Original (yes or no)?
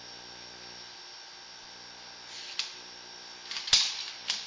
yes